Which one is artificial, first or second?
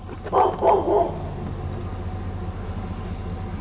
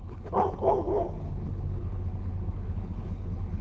second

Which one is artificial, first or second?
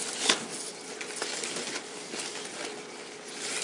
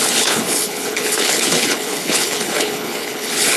second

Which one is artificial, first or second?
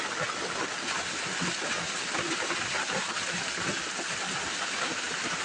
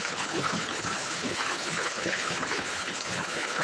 second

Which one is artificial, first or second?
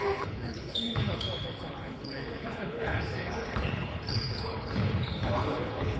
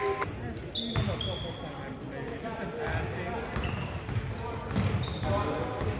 first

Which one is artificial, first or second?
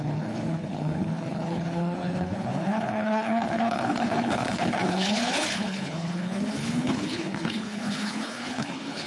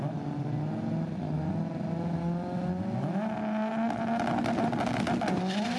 first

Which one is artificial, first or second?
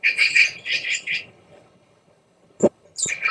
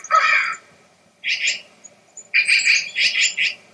first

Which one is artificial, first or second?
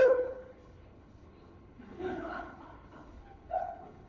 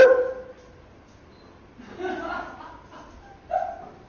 first